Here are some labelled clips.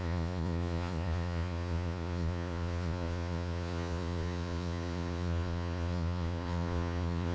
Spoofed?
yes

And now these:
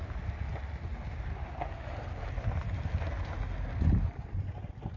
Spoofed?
no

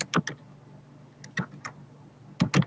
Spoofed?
no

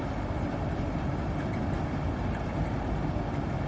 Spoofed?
no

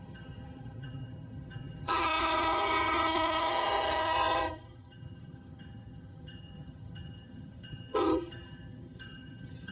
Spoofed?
yes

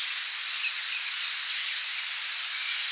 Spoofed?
no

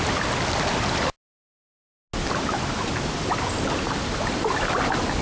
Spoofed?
no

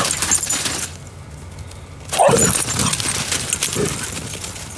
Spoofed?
no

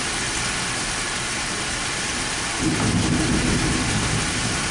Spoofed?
no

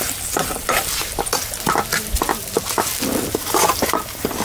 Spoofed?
no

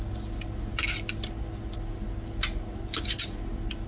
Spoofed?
no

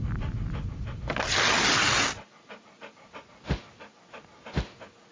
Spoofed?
no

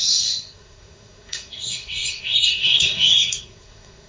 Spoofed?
yes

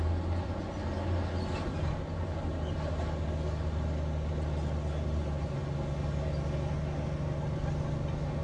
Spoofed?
no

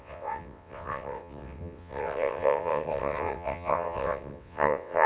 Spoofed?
yes